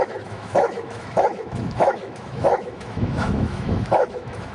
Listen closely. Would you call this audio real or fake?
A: fake